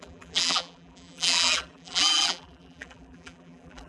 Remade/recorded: remade